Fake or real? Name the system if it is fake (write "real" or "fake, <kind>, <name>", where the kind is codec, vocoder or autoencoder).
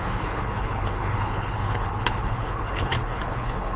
fake, codec, HILCodec